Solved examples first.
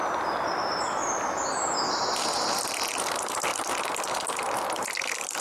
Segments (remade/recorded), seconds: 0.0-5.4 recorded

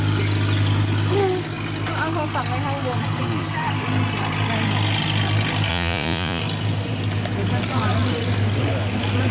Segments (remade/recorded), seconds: 0.0-5.7 recorded; 5.7-6.4 remade; 6.4-9.3 recorded

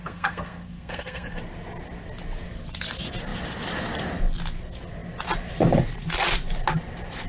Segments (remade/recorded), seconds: 0.0-1.4 remade; 1.4-7.3 recorded

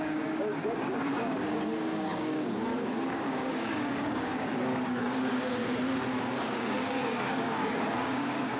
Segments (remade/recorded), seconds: 0.0-5.6 remade; 5.6-6.4 recorded; 6.4-8.6 remade

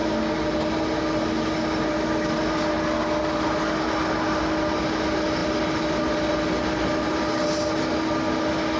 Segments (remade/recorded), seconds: 0.0-8.8 recorded

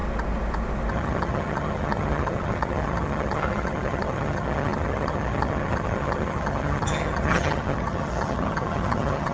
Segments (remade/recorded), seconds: 0.0-0.9 recorded; 0.9-9.3 remade

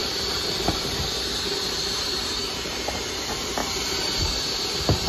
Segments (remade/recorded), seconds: 0.0-3.1 remade; 3.1-3.6 recorded; 3.6-4.4 remade; 4.4-5.1 recorded

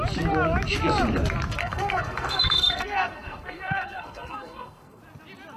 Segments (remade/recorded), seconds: 0.0-1.6 recorded; 1.6-5.0 remade; 5.0-5.6 recorded